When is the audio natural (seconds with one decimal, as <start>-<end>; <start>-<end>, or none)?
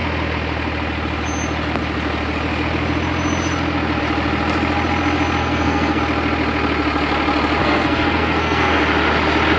0.0-5.4; 6.0-7.6; 8.8-9.6